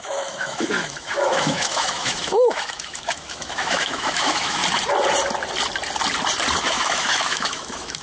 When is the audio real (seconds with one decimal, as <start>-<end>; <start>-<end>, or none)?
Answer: 4.6-6.6